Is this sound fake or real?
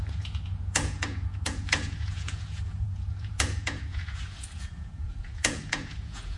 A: fake